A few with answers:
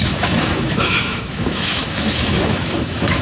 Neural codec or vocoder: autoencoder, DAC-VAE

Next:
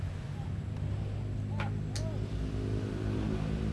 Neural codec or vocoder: none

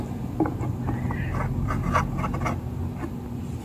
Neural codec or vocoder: none